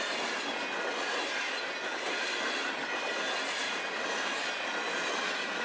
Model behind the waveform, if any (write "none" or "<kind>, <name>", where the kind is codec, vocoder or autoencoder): none